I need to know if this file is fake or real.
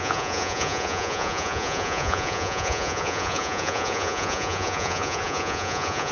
fake